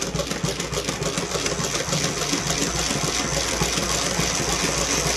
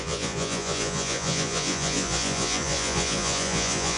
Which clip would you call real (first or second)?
first